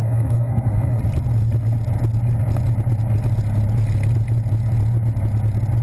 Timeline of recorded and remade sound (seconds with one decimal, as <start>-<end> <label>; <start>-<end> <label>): 0.0-1.0 remade; 1.0-5.8 recorded